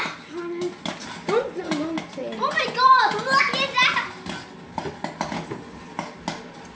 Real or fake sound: real